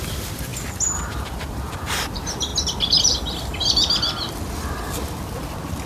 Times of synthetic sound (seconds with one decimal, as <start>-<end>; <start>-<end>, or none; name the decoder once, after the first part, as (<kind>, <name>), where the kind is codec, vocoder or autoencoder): 0.0-0.5 (vocoder, BigVGAN v2); 1.0-2.5